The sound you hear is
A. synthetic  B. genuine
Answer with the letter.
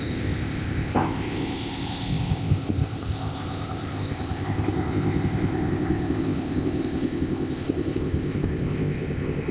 A